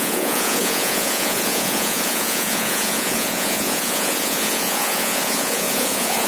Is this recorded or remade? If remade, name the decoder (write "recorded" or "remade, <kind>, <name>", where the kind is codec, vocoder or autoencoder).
remade, vocoder, Vocos